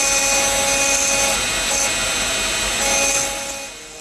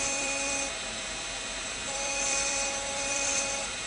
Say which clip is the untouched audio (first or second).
first